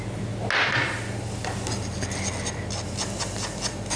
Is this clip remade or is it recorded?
recorded